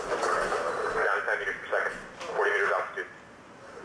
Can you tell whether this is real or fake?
real